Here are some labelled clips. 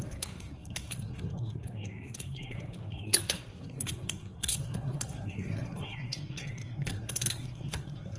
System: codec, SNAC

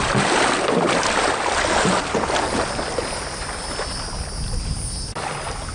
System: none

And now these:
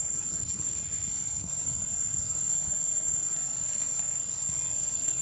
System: codec, SNAC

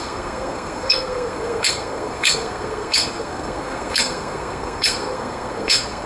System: codec, SNAC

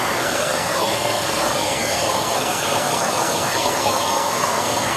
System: codec, SNAC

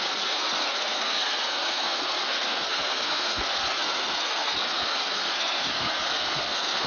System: codec, SNAC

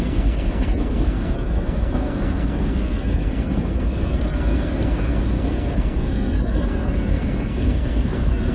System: codec, SNAC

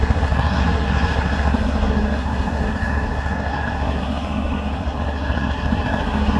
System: codec, SNAC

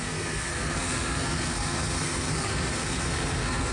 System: codec, SNAC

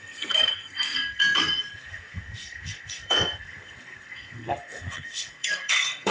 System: codec, SNAC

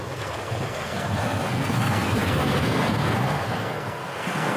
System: codec, SNAC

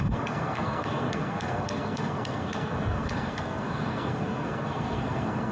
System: codec, SNAC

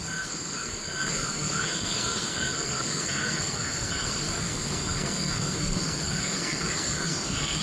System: codec, SNAC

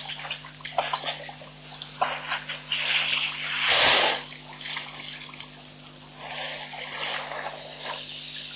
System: none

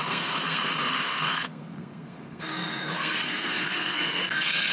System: codec, SNAC